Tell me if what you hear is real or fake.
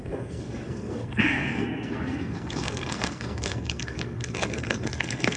fake